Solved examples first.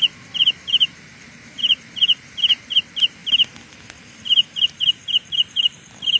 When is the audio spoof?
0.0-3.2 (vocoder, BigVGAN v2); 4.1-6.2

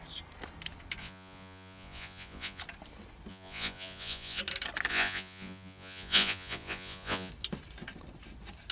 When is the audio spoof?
1.0-2.6 (vocoder, Vocos); 3.3-4.4; 4.9-7.3

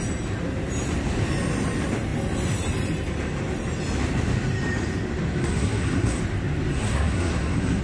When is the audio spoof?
5.4-6.2 (codec, SNAC); 6.7-7.8

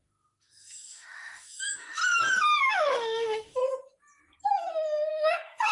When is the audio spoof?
0.0-2.0 (autoencoder, DAC-VAE); 2.7-3.6; 5.1-5.7

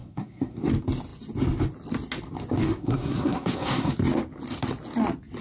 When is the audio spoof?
0.0-0.6 (codec, SNAC); 2.7-3.9

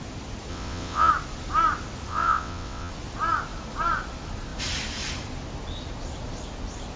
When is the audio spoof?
0.5-1.1 (vocoder, WaveNeXt); 2.1-2.9

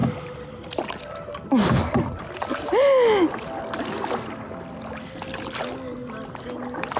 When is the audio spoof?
none

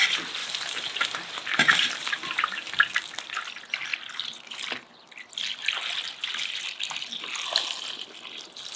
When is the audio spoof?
0.4-2.9 (vocoder, BigVGAN v2)